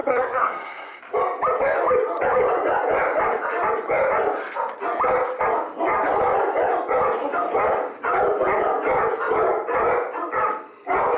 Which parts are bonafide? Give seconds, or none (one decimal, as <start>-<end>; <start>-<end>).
1.0-11.2